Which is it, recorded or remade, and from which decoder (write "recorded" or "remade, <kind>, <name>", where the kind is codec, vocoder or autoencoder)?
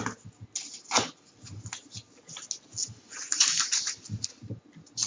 recorded